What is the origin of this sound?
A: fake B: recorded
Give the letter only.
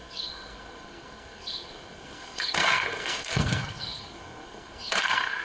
A